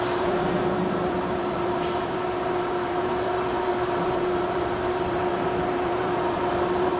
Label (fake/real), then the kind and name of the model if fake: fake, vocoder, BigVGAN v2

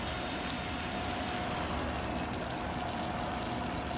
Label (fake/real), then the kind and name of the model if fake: real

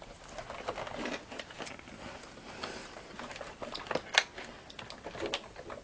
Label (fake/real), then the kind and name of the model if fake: real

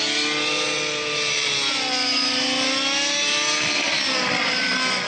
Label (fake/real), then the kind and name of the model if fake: real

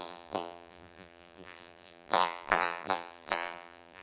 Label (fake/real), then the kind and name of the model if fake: fake, vocoder, BigVGAN v2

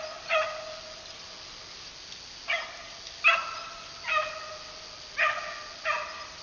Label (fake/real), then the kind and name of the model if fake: real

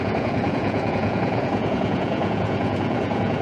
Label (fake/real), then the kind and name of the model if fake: fake, vocoder, Vocos